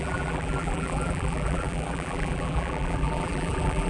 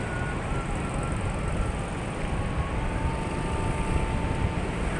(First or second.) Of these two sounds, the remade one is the first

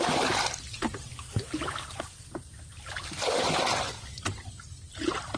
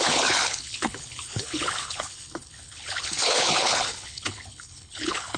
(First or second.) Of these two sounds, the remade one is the second